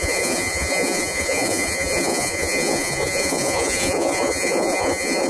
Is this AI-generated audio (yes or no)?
yes